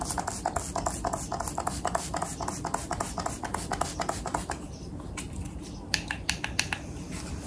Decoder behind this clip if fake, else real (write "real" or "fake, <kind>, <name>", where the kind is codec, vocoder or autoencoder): real